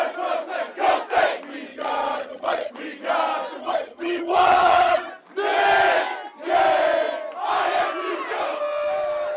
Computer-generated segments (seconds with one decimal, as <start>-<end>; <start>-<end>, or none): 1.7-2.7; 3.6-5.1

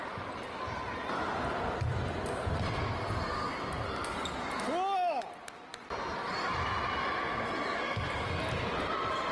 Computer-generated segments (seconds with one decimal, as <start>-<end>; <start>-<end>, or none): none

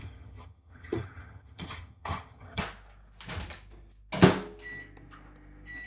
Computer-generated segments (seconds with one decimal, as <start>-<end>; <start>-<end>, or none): 0.0-2.6

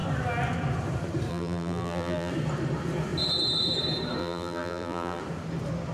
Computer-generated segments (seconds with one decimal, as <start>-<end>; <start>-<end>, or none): 1.3-2.3; 4.2-5.2